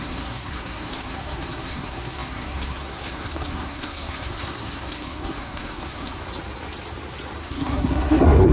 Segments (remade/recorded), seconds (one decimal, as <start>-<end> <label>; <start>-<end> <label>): 0.0-6.2 remade; 6.2-7.4 recorded; 7.4-8.5 remade